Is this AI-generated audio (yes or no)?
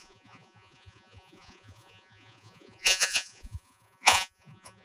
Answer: yes